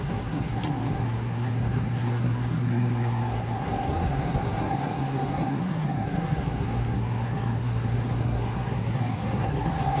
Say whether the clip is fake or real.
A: fake